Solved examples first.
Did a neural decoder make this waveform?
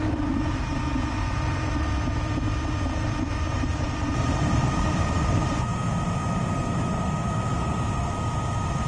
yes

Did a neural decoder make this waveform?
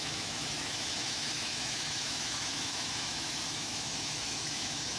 yes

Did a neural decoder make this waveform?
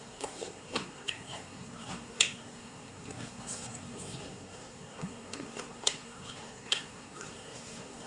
yes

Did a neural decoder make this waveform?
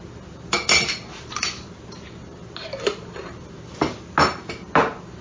no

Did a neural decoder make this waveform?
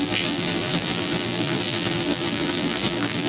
yes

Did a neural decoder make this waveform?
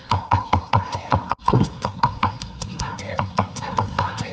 yes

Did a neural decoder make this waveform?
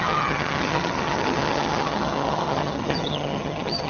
yes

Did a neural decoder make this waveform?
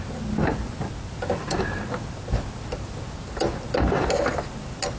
no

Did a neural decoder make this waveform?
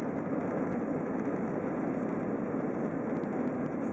no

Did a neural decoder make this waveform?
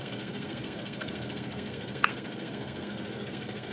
yes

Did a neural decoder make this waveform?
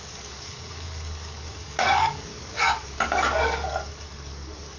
yes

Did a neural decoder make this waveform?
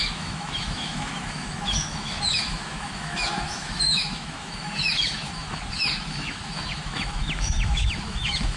yes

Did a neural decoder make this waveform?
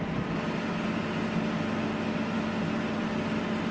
no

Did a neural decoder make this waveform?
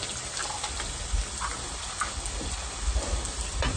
no